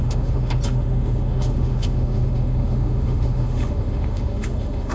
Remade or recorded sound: remade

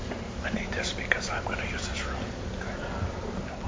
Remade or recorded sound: recorded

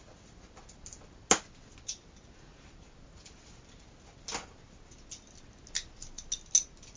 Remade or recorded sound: recorded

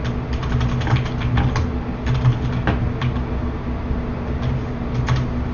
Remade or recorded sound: recorded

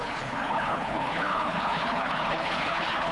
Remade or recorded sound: remade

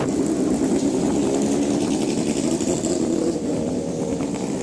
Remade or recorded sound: recorded